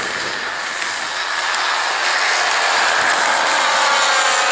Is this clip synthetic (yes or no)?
no